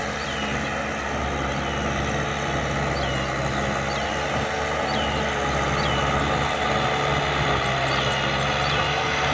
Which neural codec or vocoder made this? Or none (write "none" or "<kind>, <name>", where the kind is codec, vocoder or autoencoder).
none